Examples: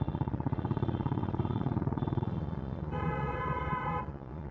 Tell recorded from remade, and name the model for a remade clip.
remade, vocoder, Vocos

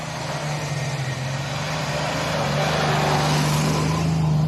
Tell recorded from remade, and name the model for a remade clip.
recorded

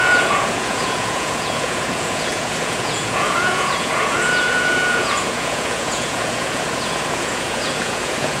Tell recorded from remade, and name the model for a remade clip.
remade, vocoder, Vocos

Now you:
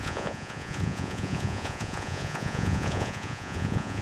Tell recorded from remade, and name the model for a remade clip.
remade, vocoder, Vocos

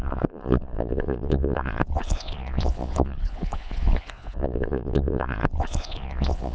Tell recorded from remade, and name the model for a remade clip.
remade, vocoder, Vocos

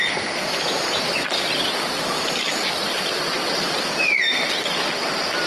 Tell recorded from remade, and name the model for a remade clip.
recorded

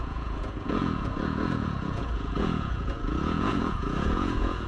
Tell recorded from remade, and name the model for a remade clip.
remade, vocoder, Vocos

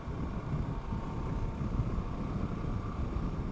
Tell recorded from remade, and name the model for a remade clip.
recorded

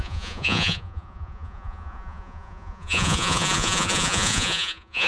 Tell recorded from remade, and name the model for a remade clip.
remade, vocoder, Vocos